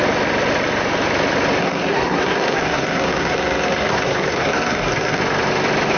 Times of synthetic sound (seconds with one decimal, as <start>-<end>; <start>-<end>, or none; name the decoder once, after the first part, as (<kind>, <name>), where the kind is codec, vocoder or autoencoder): 1.6-5.2 (codec, SNAC)